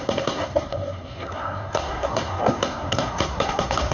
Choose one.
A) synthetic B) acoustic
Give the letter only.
A